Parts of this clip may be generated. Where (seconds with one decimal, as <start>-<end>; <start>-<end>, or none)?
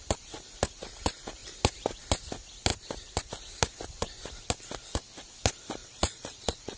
5.8-6.8